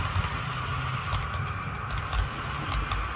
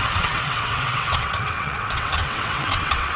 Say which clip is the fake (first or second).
second